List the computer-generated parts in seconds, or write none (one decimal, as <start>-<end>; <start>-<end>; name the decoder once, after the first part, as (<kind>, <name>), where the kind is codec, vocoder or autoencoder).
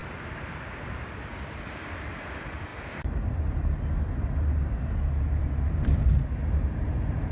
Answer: 2.7-4.0 (vocoder, BigVGAN v2); 5.4-6.1